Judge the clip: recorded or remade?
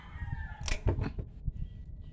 recorded